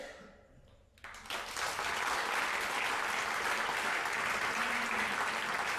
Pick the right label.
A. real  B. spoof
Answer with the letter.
B